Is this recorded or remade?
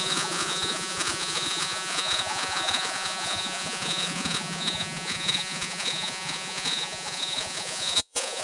remade